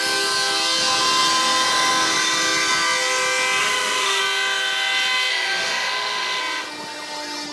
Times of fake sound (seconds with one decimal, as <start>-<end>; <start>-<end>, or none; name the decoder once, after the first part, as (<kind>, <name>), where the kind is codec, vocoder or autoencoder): 3.6-4.2 (autoencoder, DAC-VAE); 5.3-6.4